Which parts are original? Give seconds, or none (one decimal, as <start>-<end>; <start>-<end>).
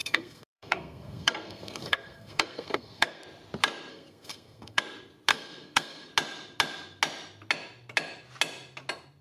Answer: 3.2-3.9; 4.8-5.3; 6.1-9.2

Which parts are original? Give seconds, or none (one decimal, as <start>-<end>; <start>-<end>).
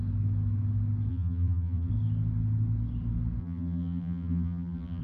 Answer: 0.0-1.1; 1.9-3.4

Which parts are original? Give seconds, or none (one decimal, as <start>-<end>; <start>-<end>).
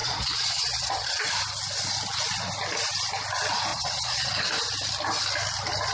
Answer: 1.2-3.7; 4.3-5.9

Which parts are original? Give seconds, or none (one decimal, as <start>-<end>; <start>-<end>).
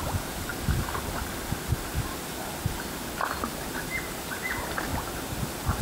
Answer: 0.0-5.8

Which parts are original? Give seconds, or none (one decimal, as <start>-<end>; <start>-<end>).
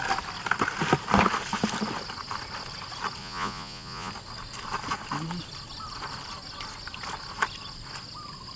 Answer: 0.0-3.2; 4.1-8.6